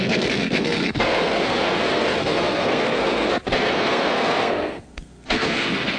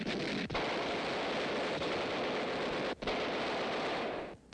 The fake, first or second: first